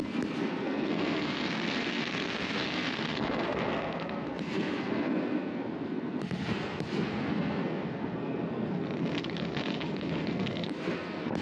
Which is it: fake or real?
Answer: fake